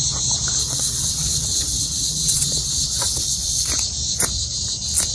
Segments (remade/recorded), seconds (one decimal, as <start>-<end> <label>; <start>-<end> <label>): 0.0-0.6 recorded; 0.6-3.7 remade; 3.7-5.1 recorded